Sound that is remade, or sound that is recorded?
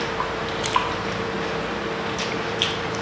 remade